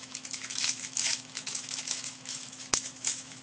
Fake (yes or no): yes